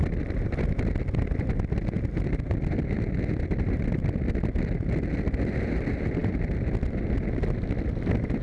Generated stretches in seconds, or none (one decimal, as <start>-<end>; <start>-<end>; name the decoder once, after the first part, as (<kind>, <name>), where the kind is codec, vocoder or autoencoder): none